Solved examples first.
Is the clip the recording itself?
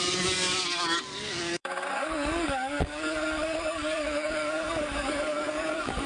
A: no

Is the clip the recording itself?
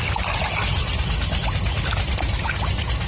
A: yes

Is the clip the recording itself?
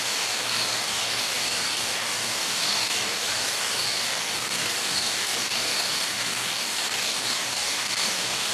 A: no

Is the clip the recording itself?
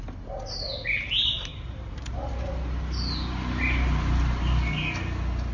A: yes